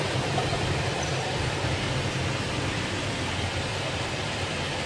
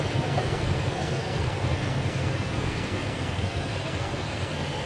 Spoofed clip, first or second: second